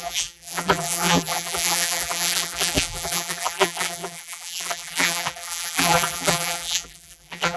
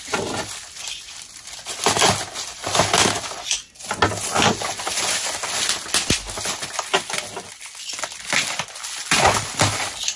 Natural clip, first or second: second